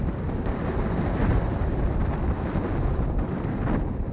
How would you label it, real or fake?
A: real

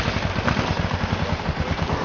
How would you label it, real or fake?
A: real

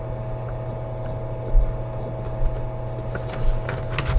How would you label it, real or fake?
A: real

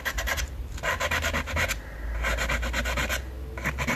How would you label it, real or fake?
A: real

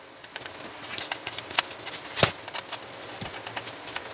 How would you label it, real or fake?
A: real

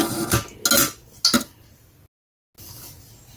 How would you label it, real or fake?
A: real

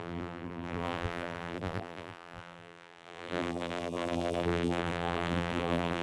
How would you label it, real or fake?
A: fake